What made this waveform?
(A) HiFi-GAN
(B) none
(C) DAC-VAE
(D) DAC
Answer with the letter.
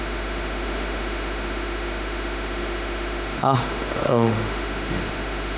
C